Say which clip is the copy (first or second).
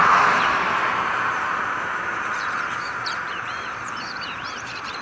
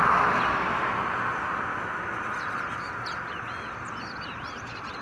first